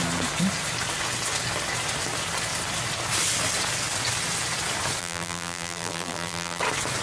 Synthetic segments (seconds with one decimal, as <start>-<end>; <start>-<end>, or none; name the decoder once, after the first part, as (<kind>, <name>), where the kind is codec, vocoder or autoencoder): 5.0-6.6 (vocoder, BigVGAN v2)